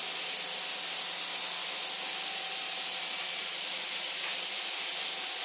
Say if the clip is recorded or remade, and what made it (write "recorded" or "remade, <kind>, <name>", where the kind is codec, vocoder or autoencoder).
recorded